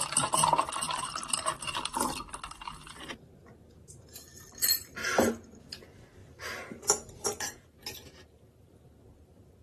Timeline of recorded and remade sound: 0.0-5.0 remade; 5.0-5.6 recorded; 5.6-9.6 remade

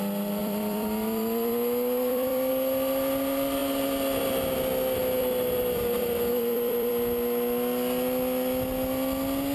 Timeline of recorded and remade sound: 0.0-0.4 recorded; 0.4-2.5 remade; 2.5-5.2 recorded; 5.2-6.9 remade; 6.9-9.5 recorded

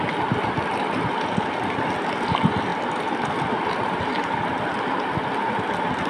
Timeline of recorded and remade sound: 0.0-6.1 recorded

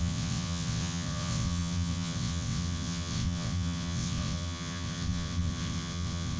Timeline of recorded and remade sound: 0.0-6.4 remade